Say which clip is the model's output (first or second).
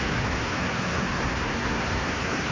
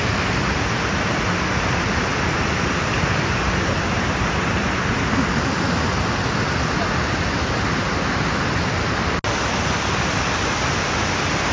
first